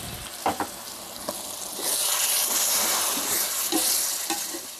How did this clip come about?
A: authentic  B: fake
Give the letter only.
A